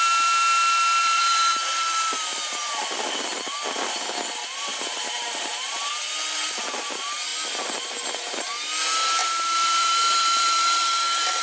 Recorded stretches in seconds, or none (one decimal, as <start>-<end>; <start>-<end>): 0.0-1.0; 2.2-4.7; 5.9-9.2; 10.8-11.4